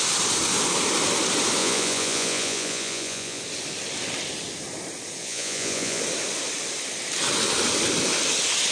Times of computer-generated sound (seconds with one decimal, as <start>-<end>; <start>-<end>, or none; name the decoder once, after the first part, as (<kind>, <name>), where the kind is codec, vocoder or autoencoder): 1.6-3.4 (vocoder, Vocos); 5.2-6.0